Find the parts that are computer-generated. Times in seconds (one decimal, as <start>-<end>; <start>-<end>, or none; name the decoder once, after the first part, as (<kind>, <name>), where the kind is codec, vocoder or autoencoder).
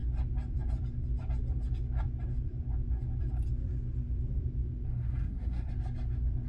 4.9-5.7 (codec, SNAC)